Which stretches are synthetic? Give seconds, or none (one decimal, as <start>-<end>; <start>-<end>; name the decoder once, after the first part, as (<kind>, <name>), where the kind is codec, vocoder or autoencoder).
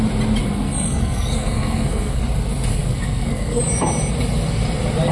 0.4-2.2 (codec, SNAC); 2.7-3.6